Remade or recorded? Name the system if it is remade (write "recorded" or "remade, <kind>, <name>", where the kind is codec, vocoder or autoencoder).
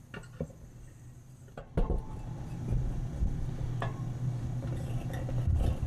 recorded